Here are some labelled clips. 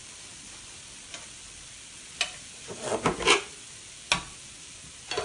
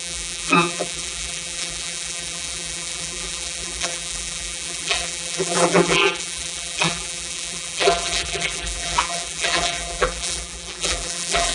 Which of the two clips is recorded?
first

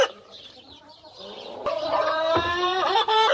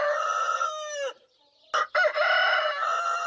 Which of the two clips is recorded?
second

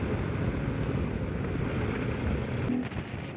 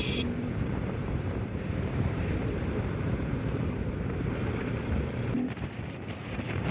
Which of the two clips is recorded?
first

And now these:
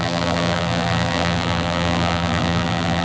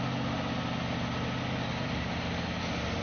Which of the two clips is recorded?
second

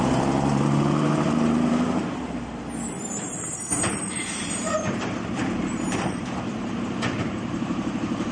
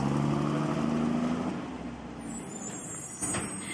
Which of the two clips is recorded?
second